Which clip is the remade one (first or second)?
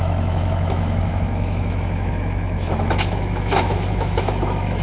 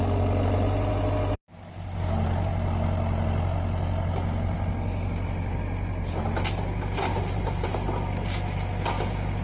first